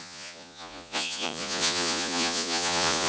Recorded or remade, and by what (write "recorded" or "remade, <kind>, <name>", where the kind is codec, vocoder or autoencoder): remade, vocoder, Vocos